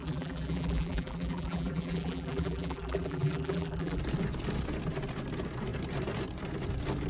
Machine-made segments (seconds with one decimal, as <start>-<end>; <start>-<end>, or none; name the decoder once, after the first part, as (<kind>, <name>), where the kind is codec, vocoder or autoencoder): 0.0-4.0 (vocoder, BigVGAN v2)